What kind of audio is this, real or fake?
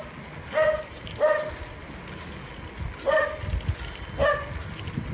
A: real